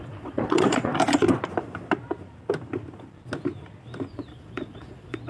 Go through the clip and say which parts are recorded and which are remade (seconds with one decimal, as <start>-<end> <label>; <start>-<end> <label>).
0.0-0.9 remade; 0.9-4.1 recorded; 4.1-5.3 remade